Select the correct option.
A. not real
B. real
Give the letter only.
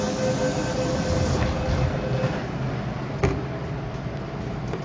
B